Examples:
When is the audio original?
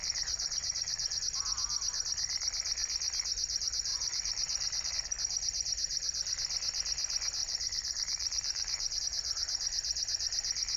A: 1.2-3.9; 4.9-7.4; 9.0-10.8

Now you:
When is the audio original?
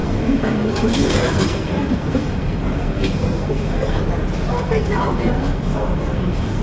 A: 4.0-4.5